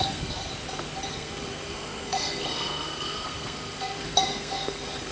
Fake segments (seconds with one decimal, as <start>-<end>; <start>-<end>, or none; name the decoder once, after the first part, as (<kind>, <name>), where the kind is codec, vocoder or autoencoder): 0.0-0.5 (codec, SNAC); 1.1-5.1